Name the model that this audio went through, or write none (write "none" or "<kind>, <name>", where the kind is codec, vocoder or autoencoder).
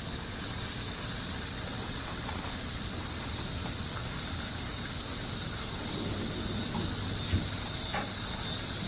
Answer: none